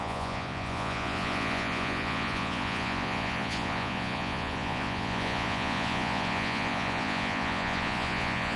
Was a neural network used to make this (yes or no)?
yes